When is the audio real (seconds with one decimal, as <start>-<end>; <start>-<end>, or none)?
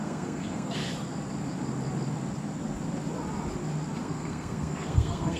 0.8-4.0